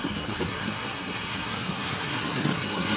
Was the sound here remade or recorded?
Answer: remade